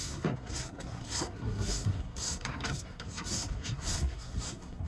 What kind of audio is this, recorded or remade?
remade